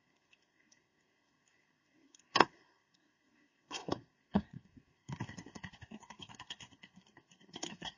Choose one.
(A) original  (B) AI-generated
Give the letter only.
B